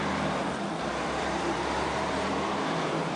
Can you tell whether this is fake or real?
fake